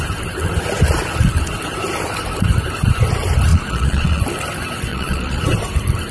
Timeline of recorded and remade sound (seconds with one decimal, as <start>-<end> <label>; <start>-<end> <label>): 0.0-3.5 recorded; 3.5-4.2 remade; 4.2-4.9 recorded; 4.9-5.4 remade; 5.4-6.1 recorded